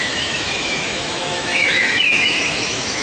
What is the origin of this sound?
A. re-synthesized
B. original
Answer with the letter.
A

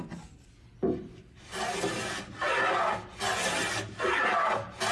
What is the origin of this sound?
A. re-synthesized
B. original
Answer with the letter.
B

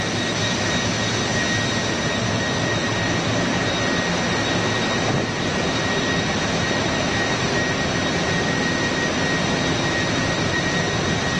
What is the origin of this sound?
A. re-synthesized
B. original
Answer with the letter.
B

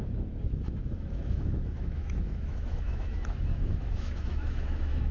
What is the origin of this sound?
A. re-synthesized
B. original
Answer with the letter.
A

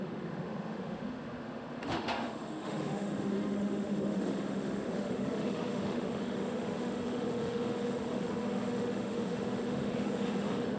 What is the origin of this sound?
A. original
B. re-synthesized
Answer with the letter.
B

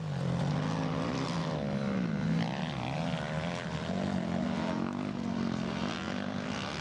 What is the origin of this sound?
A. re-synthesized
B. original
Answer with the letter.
B